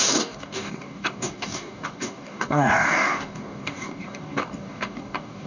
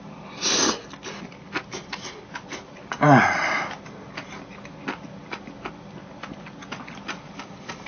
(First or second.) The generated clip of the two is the first